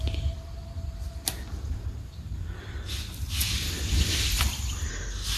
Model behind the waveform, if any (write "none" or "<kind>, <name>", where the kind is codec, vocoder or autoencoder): none